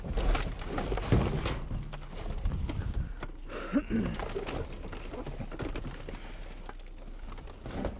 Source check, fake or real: real